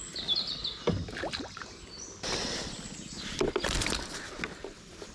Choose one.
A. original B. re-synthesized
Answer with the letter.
A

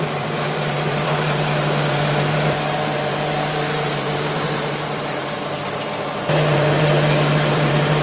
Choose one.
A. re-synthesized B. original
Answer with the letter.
A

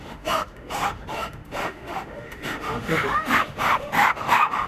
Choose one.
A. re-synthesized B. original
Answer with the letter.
A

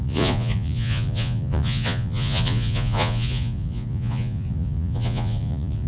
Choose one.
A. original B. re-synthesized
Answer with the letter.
B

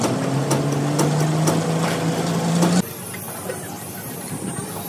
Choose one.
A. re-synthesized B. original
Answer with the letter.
B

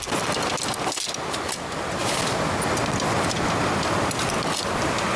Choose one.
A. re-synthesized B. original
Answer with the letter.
B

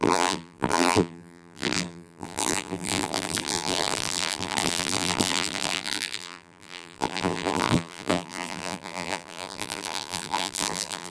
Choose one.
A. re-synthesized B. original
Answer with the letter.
A